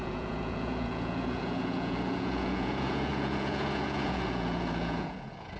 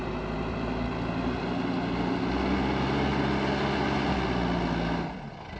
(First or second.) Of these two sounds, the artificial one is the first